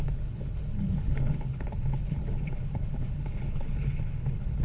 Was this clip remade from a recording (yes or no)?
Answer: yes